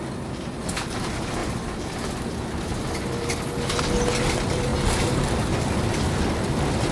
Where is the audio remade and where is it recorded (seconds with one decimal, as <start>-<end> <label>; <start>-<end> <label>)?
0.0-6.9 recorded